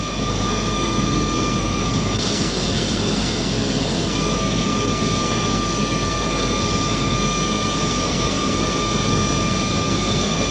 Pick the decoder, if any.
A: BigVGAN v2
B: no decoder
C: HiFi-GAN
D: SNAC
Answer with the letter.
D